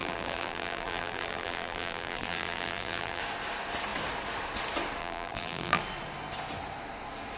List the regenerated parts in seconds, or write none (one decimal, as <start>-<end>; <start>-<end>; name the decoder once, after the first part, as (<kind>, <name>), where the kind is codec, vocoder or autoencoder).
0.0-3.2 (vocoder, BigVGAN v2); 5.0-5.8